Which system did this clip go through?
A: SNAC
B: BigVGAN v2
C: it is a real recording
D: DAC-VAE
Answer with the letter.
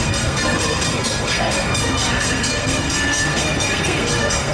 A